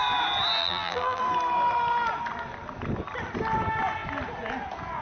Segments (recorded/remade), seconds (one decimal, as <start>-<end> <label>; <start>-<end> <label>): 0.0-0.6 recorded; 0.6-1.2 remade; 1.2-5.0 recorded